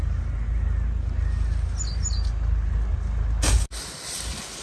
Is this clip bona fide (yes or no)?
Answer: yes